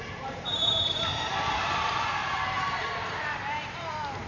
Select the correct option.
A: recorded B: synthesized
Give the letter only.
B